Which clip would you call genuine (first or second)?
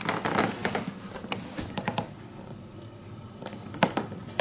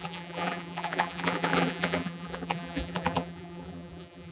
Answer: first